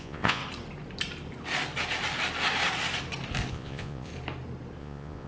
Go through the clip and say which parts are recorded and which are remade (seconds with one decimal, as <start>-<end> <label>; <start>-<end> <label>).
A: 0.0-0.4 remade; 0.4-3.5 recorded; 3.5-4.1 remade; 4.1-4.8 recorded; 4.8-5.3 remade